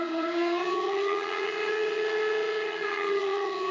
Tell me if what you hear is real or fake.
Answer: fake